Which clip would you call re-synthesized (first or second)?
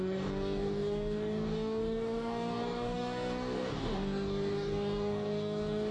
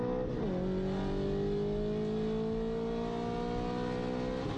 first